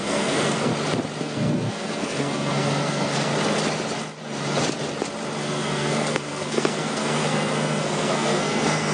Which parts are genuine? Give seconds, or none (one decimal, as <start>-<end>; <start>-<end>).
0.7-1.2; 3.3-5.4